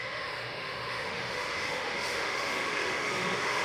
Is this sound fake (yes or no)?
yes